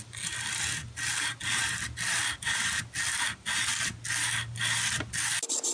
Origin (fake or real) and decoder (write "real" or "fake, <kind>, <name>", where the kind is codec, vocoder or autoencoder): real